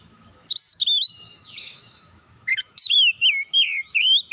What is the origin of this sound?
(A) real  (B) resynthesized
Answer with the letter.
B